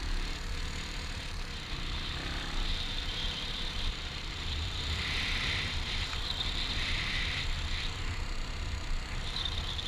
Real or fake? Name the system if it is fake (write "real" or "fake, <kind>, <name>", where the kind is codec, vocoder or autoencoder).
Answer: fake, vocoder, BigVGAN v2